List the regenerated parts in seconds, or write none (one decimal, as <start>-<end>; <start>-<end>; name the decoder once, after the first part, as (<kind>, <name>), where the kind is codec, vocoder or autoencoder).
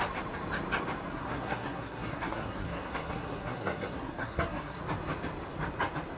1.1-4.8 (codec, SNAC)